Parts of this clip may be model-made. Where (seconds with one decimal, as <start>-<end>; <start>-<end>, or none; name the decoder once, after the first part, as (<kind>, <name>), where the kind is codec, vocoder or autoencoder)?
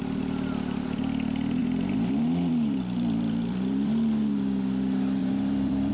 1.6-3.9 (vocoder, BigVGAN v2); 5.2-5.9